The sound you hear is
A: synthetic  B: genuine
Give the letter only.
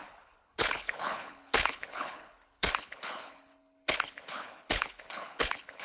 A